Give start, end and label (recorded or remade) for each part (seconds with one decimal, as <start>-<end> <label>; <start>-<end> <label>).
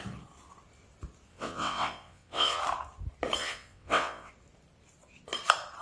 0.0-1.3 recorded; 1.3-2.6 remade; 2.6-3.4 recorded; 3.4-4.3 remade; 4.3-5.8 recorded